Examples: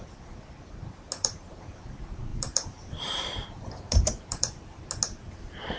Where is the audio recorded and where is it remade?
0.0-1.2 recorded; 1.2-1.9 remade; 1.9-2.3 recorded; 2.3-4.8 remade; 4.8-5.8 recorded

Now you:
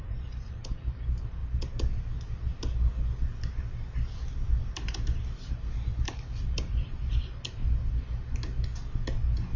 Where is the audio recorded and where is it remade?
0.0-1.4 remade; 1.4-4.6 recorded; 4.6-7.6 remade; 7.6-9.6 recorded